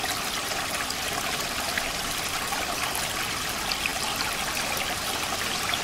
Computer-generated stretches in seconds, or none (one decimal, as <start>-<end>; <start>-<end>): none